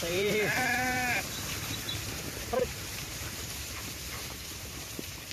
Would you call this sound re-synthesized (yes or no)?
yes